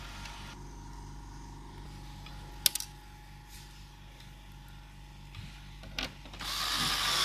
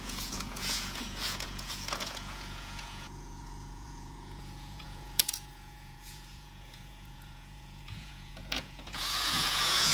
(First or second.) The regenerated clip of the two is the second